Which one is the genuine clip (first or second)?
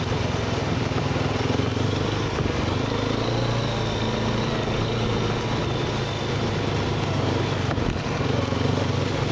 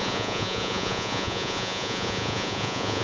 first